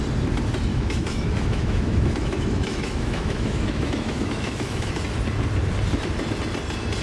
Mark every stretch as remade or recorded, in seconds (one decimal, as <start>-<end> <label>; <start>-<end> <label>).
0.0-0.7 recorded; 0.7-4.9 remade; 4.9-7.0 recorded